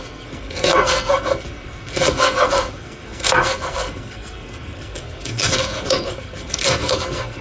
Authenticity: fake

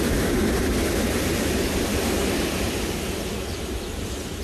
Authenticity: real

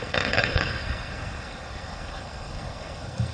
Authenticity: fake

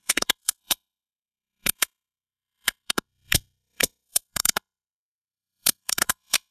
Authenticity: fake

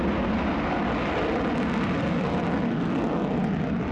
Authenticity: real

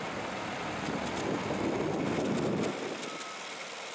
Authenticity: real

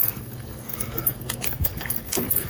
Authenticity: fake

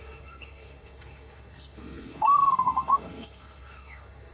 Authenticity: fake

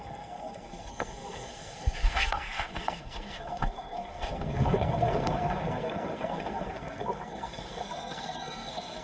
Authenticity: fake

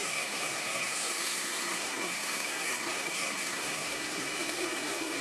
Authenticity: fake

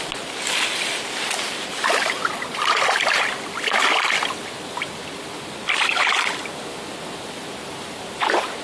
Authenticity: real